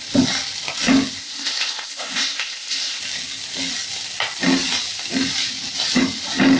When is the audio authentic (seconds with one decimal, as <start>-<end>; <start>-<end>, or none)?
0.0-1.2; 3.0-6.6